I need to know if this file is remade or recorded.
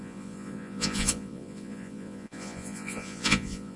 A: remade